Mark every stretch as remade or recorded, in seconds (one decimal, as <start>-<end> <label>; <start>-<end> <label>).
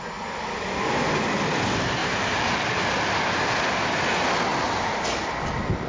0.0-2.0 recorded; 2.0-2.6 remade; 2.6-4.5 recorded; 4.5-5.3 remade; 5.3-5.9 recorded